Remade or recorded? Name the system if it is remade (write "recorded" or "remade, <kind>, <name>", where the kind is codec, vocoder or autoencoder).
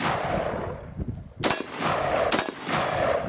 recorded